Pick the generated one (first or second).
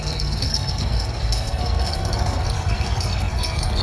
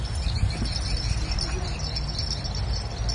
first